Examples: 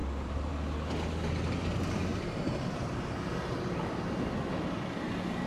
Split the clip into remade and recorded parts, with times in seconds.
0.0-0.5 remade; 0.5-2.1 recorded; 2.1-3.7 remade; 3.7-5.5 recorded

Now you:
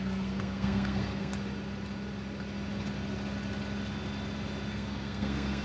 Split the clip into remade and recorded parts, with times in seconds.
0.0-1.3 remade; 1.3-4.7 recorded; 4.7-5.6 remade

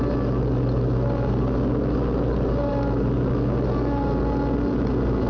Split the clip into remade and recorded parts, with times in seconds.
0.0-5.3 recorded

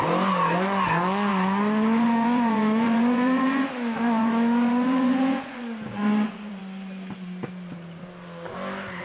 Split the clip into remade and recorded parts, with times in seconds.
0.0-1.3 recorded; 1.3-3.7 remade; 3.7-4.2 recorded; 4.2-6.6 remade; 6.6-9.0 recorded